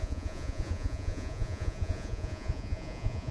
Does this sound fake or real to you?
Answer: fake